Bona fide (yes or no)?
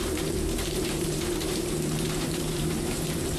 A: no